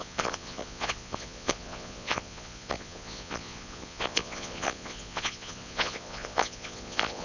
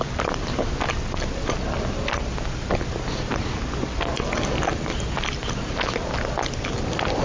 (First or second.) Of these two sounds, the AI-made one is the first